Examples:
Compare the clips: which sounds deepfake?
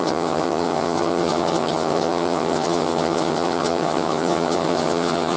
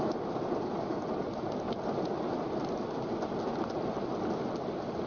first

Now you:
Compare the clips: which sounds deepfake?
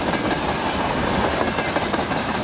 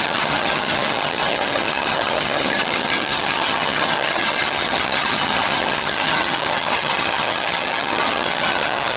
second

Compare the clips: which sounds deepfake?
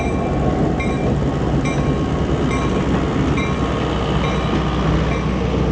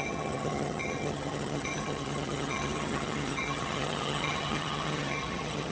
second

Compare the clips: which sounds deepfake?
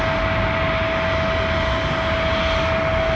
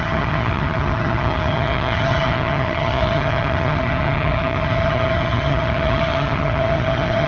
second